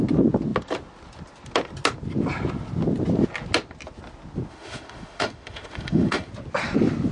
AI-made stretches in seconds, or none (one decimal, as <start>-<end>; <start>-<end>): 4.5-6.3

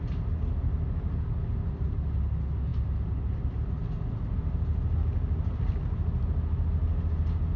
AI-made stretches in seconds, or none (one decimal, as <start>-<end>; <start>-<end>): none

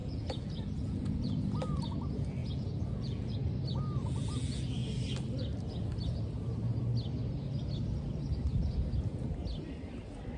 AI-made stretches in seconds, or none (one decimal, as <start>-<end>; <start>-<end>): 0.0-1.4; 2.4-3.3

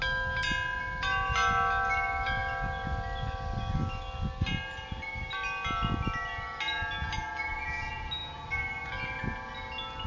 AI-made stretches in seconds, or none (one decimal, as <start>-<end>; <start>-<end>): none

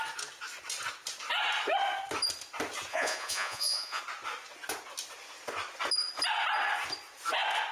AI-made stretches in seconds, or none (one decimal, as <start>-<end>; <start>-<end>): 2.9-4.0

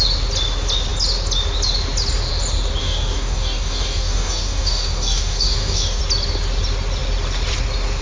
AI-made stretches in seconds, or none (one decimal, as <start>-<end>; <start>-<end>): 2.8-6.0

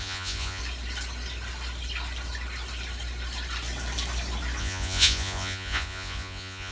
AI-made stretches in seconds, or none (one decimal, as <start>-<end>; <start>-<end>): 0.0-0.6; 4.6-6.7

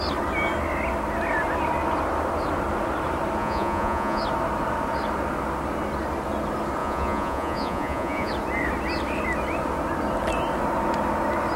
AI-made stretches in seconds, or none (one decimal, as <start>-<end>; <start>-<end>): 3.4-4.2; 6.8-8.3